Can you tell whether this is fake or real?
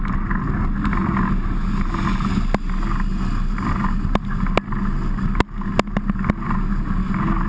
real